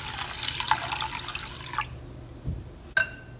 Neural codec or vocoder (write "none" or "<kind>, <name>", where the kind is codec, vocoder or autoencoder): none